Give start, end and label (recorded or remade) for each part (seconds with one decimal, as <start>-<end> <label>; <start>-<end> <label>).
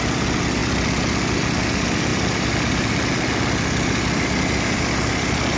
0.0-5.6 recorded